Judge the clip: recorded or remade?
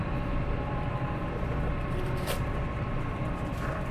remade